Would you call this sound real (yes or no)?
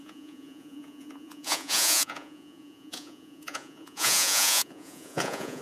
no